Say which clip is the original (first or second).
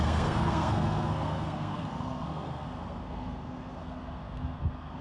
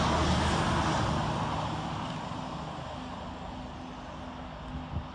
second